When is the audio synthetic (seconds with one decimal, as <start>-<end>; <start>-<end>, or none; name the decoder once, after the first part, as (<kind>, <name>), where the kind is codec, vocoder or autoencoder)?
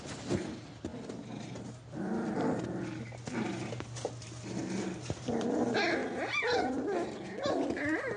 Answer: none